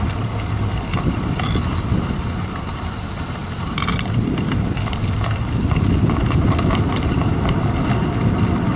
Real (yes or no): no